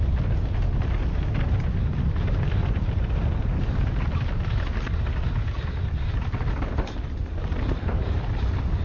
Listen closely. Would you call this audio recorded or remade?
recorded